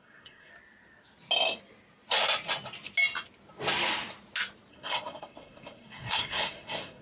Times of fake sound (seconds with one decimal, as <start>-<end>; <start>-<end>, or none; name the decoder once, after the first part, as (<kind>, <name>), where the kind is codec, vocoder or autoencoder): 0.0-0.5 (codec, SNAC); 4.7-7.0

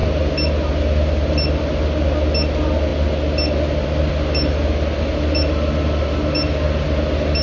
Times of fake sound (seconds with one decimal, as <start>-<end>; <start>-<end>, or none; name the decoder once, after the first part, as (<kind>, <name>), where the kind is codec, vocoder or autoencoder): none